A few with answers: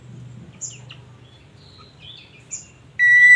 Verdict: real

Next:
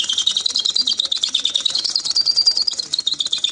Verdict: fake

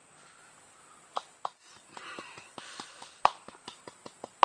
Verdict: real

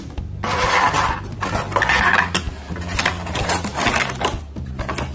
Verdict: real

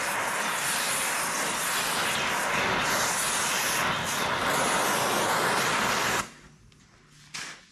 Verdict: real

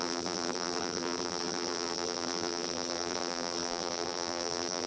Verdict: fake